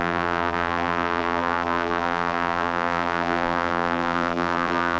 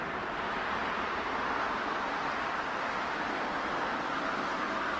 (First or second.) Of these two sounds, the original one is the second